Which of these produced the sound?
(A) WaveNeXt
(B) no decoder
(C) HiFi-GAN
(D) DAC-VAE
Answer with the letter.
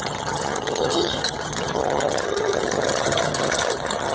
C